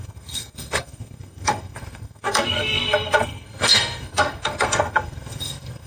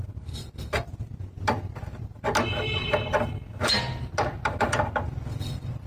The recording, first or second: second